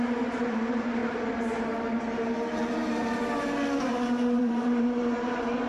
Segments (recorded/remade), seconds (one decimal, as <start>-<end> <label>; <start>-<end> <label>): 0.0-1.0 remade; 1.0-4.4 recorded; 4.4-5.7 remade